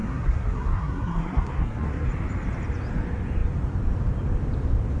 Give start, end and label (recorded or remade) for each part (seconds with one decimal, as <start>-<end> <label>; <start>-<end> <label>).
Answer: 0.0-2.1 remade; 2.1-5.0 recorded